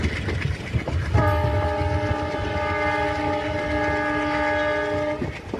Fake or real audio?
real